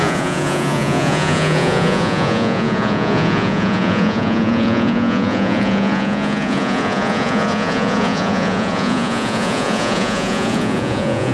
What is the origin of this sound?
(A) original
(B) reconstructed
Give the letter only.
B